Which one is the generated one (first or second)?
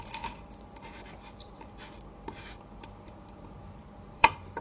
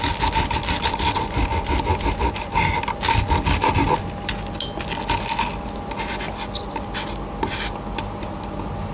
first